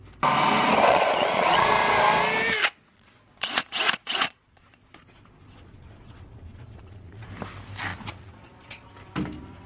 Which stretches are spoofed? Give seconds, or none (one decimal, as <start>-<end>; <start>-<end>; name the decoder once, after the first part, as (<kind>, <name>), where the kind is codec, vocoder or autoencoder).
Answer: 0.9-1.7 (vocoder, Vocos); 2.6-7.3; 7.9-8.9

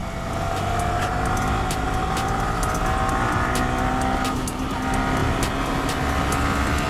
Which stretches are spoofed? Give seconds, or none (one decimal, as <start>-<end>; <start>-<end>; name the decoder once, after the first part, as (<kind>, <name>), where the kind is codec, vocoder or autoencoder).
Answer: none

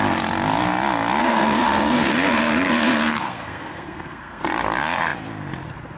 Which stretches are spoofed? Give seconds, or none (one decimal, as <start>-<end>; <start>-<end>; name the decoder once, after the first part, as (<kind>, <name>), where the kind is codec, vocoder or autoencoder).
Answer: 1.2-4.4 (codec, SNAC)

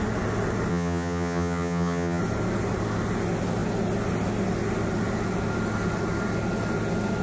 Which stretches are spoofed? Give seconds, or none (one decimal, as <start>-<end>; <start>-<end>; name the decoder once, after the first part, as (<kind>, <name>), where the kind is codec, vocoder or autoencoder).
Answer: 0.7-2.2 (vocoder, HiFi-GAN)